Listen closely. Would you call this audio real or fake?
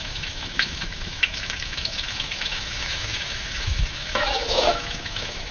fake